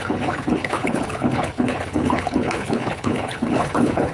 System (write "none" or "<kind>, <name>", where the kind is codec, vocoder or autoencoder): codec, HILCodec